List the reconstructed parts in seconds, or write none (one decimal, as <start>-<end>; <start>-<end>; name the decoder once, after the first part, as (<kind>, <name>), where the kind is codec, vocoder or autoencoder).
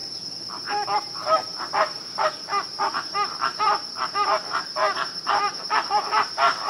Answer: 0.5-6.7 (vocoder, BigVGAN v2)